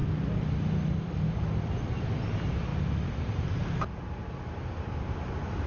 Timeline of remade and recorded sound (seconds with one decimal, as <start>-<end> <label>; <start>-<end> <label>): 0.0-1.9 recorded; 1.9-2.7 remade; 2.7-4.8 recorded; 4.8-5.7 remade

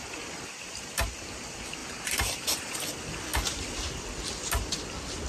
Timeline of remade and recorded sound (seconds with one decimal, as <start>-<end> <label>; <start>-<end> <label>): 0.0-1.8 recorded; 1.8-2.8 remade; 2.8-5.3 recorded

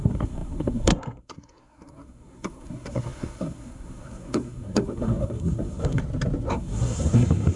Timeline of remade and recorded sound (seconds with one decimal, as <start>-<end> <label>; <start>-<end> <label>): 0.0-6.0 remade; 6.0-6.5 recorded; 6.5-7.6 remade

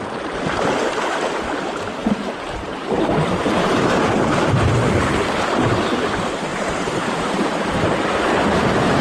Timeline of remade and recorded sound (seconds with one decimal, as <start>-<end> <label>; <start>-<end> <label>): 0.0-2.0 recorded; 2.0-4.4 remade; 4.4-6.5 recorded; 6.5-8.2 remade; 8.2-9.0 recorded

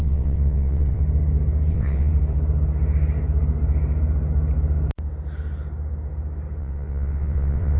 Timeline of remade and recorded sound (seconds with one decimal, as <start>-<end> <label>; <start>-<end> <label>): 0.0-1.0 remade; 1.0-1.7 recorded; 1.7-2.1 remade; 2.1-6.6 recorded; 6.6-7.8 remade

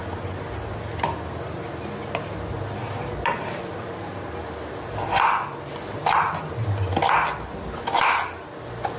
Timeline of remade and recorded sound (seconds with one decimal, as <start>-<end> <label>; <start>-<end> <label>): 0.0-9.0 recorded

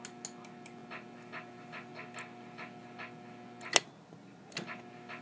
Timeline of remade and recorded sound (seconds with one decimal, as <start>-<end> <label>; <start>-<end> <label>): 0.0-5.2 recorded

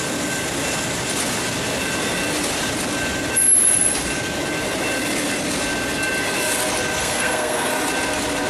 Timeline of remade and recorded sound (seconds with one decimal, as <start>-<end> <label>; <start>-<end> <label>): 0.0-7.0 recorded; 7.0-7.7 remade; 7.7-8.5 recorded